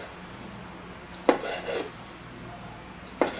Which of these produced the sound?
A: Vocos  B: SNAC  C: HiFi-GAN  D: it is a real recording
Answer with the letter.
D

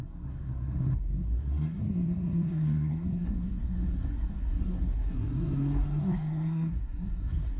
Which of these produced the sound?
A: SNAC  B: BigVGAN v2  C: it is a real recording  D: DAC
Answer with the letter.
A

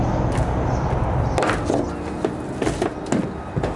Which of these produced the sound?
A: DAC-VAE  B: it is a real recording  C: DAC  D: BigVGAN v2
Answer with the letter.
B